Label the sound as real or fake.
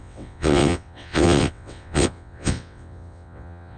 fake